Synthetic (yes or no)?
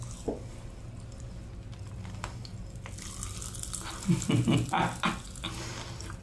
no